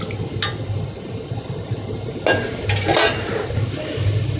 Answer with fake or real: real